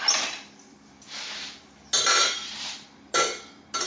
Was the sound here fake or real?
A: real